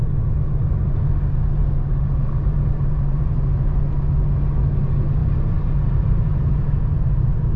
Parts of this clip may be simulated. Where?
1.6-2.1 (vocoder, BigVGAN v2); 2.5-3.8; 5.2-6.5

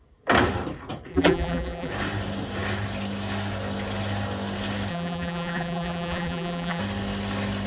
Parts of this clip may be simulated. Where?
1.1-1.9 (vocoder, BigVGAN v2); 4.9-6.8

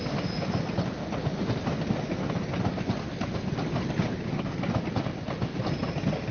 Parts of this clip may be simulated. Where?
0.0-1.0 (vocoder, BigVGAN v2); 4.8-6.3

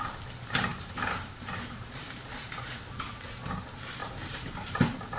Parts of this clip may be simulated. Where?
0.7-2.3 (vocoder, BigVGAN v2); 4.0-4.8